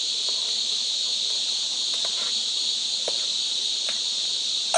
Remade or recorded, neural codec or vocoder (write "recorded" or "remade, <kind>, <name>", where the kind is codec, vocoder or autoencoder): recorded